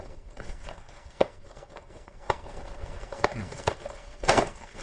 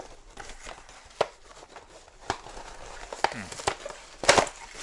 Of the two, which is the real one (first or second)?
second